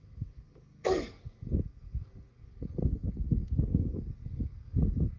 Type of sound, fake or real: fake